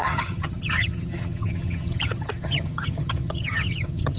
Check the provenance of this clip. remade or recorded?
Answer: remade